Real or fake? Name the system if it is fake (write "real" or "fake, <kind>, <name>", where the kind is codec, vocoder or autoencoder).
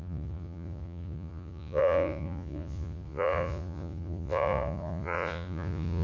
fake, vocoder, Vocos